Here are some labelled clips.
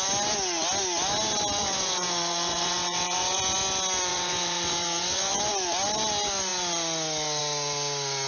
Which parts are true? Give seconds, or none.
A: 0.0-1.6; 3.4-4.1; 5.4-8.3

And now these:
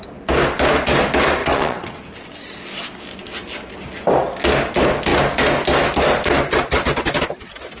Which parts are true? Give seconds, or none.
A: 0.0-1.4; 1.9-7.8

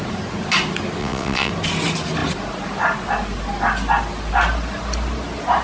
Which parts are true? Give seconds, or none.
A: 0.0-1.0; 1.5-5.6